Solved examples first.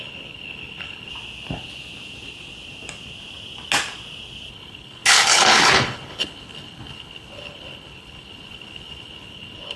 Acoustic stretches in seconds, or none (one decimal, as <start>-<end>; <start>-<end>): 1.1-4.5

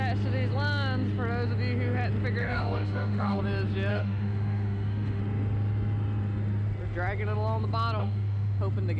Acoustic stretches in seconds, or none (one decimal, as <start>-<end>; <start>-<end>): 0.0-2.4; 3.4-3.9; 5.2-8.0; 8.6-9.0

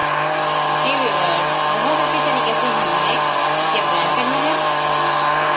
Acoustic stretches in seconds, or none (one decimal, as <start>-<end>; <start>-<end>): 0.0-5.6